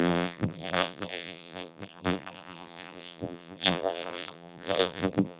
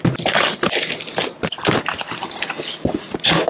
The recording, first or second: second